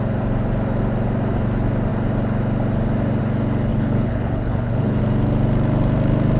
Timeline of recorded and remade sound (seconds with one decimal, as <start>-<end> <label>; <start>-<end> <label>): 0.0-3.7 recorded; 3.7-5.0 remade; 5.0-6.4 recorded